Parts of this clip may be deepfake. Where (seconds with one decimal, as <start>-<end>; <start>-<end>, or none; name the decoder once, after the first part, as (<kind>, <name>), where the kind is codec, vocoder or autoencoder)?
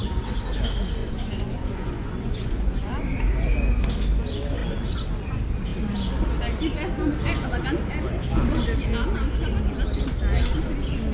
1.0-2.9 (vocoder, Vocos)